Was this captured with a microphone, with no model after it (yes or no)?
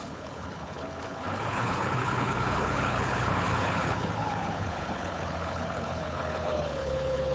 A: no